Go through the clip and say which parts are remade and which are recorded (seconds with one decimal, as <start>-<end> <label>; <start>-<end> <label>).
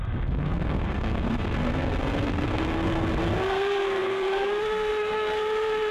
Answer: 0.0-5.9 remade